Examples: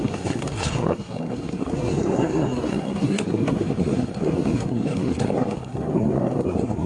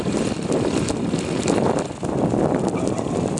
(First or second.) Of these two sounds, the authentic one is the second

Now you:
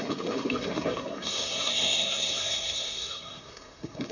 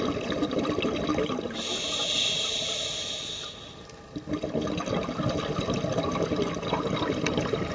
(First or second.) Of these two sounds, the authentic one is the second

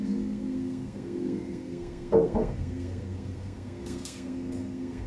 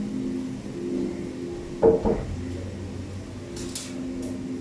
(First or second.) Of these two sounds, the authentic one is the second